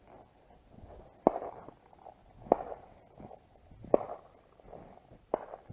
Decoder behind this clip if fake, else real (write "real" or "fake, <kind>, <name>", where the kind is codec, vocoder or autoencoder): real